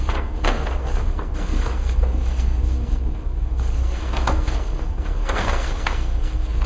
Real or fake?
fake